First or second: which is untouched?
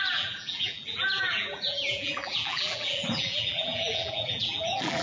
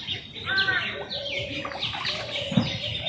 second